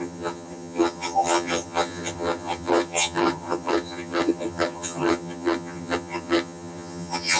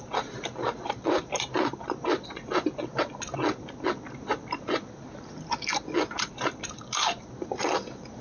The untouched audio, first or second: second